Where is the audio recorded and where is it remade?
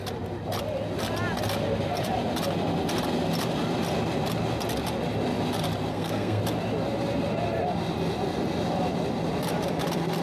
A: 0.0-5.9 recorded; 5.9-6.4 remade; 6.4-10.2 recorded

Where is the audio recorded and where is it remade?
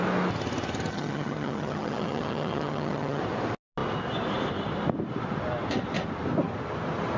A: 0.0-0.9 recorded; 0.9-3.2 remade; 3.2-7.2 recorded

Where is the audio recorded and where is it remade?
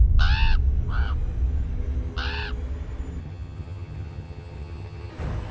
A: 0.0-3.2 recorded; 3.2-5.1 remade; 5.1-5.5 recorded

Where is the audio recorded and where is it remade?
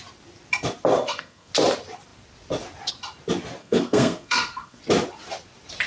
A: 0.0-0.9 recorded; 0.9-1.5 remade; 1.5-3.6 recorded; 3.6-4.8 remade; 4.8-5.9 recorded